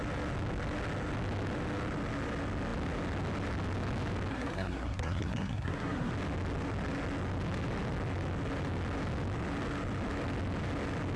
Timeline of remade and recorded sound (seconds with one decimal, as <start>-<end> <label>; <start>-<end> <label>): 0.0-4.3 recorded; 4.3-6.1 remade; 6.1-11.2 recorded